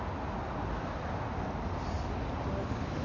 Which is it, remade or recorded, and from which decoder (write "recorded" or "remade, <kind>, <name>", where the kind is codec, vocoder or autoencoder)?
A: recorded